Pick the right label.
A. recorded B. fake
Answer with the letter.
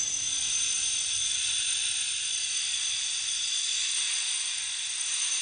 B